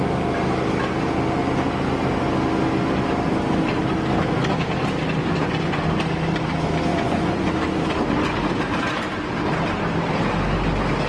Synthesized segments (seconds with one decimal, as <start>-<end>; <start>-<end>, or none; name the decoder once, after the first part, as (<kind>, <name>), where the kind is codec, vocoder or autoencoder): 5.2-5.8 (vocoder, Vocos); 6.9-7.5